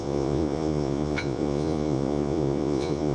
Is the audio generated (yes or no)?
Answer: yes